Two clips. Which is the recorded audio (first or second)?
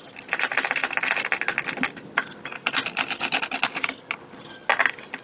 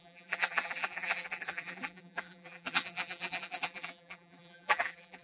first